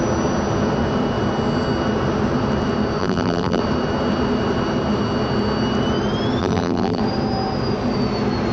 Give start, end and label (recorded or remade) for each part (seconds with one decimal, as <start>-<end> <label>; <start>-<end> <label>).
0.0-3.0 recorded; 3.0-3.6 remade; 3.6-6.4 recorded; 6.4-7.0 remade; 7.0-8.5 recorded